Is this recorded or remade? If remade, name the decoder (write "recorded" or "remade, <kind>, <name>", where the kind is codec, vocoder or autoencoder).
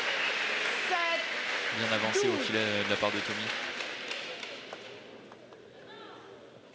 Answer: recorded